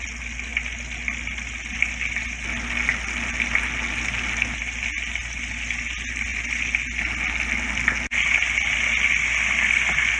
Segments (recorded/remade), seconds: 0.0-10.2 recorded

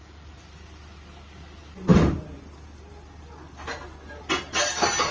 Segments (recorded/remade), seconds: 0.0-5.1 recorded